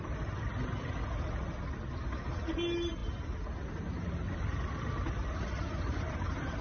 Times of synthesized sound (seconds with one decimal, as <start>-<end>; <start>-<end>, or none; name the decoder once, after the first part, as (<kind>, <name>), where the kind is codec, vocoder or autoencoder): none